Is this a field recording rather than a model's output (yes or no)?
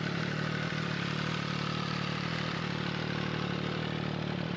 yes